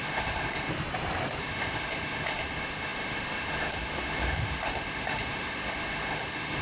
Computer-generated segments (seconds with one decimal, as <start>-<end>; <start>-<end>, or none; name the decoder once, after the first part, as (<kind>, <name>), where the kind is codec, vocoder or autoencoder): 0.0-0.7 (autoencoder, DAC-VAE); 1.4-6.6